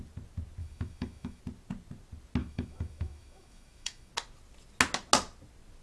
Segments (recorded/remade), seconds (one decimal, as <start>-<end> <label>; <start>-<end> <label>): 0.0-0.6 recorded; 0.6-1.4 remade; 1.4-2.4 recorded; 2.4-4.1 remade; 4.1-5.8 recorded